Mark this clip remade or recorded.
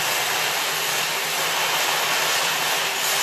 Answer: recorded